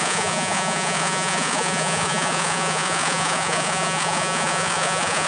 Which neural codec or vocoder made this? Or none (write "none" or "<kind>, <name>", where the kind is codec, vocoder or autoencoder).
vocoder, Vocos